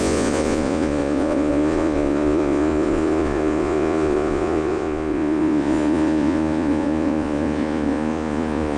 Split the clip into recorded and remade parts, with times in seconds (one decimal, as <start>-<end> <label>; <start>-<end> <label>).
0.0-8.8 remade